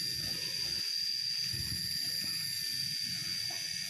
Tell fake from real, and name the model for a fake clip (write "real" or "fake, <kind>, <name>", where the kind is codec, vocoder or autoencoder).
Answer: real